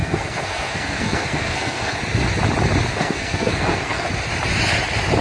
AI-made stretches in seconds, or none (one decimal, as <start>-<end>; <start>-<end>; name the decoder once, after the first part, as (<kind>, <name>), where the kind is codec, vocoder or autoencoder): 0.0-2.0 (codec, SNAC); 2.9-4.1

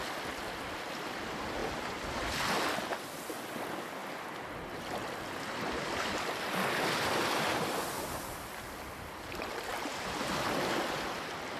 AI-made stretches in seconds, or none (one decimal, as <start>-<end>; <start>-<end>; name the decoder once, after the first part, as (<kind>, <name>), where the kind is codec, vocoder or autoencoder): none

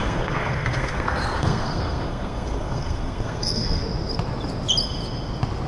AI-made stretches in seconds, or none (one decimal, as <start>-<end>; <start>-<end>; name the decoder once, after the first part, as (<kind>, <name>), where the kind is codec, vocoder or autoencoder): 0.0-3.8 (codec, SNAC)

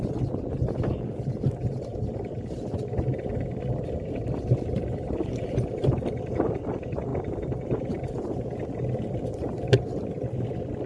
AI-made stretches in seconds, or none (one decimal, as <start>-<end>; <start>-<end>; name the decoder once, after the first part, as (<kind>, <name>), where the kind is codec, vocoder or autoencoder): none